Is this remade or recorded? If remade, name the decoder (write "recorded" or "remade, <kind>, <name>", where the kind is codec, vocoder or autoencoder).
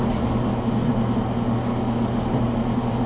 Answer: recorded